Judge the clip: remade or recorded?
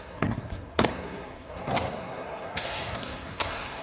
remade